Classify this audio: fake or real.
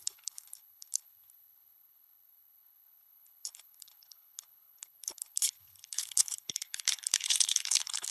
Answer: fake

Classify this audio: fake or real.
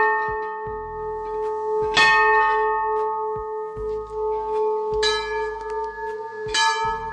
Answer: real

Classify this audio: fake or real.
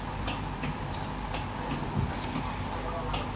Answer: real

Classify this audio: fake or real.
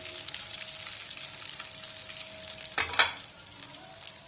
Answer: real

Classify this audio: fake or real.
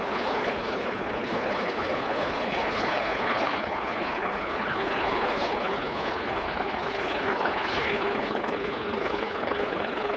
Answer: fake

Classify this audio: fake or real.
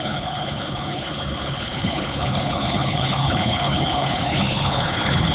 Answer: fake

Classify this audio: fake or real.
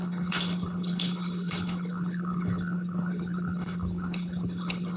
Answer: fake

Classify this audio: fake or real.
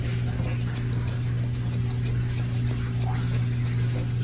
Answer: real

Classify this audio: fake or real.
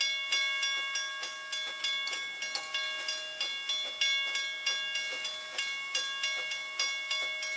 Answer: real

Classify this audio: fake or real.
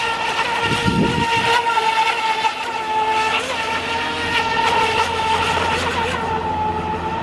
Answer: real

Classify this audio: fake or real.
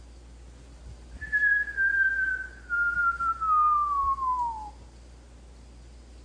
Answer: real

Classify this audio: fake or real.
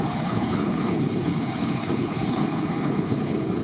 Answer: fake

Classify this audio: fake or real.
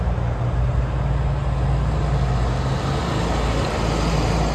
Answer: real